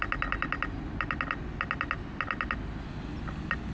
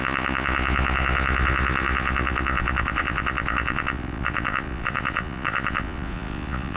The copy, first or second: second